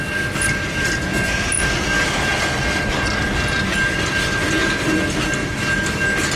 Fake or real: real